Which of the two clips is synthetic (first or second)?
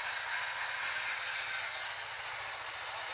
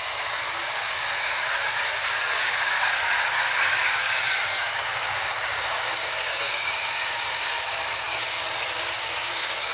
second